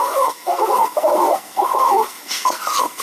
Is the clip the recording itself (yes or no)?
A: no